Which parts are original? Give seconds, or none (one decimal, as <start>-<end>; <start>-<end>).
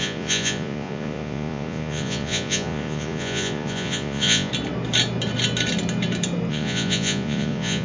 4.5-6.5